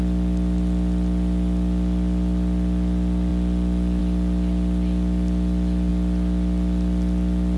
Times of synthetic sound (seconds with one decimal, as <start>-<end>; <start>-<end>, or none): none